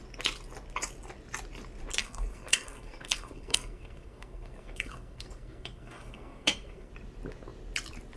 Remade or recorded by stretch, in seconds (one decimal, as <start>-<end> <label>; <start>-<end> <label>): 0.0-2.0 recorded; 2.0-6.9 remade; 6.9-8.2 recorded